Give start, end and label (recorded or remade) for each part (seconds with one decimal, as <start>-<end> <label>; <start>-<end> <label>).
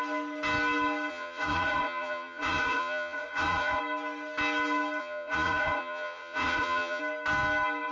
0.0-1.1 recorded; 1.1-3.8 remade; 3.8-5.0 recorded; 5.0-7.0 remade; 7.0-7.9 recorded